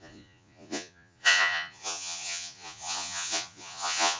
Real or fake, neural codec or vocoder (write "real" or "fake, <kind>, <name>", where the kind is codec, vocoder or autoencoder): fake, vocoder, Vocos